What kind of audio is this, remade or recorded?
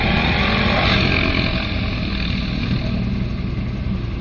recorded